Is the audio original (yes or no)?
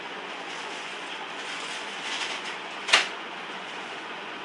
no